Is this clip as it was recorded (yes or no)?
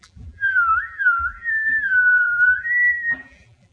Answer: no